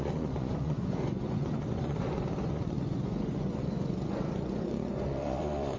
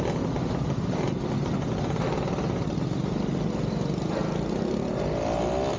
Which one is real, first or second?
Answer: second